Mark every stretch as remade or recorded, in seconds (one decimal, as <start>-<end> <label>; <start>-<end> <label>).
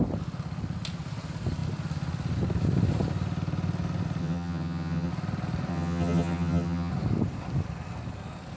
0.0-4.2 recorded; 4.2-5.1 remade; 5.1-5.7 recorded; 5.7-6.9 remade; 6.9-8.6 recorded